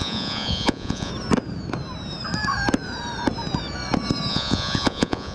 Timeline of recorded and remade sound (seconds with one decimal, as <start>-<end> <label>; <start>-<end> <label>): 0.0-1.1 remade; 1.1-4.3 recorded; 4.3-5.3 remade